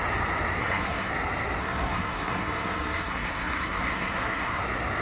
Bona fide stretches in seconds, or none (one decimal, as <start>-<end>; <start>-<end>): 0.0-0.6; 1.1-1.6; 4.6-5.0